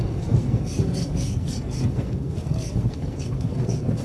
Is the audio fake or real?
fake